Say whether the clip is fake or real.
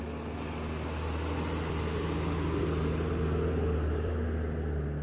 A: real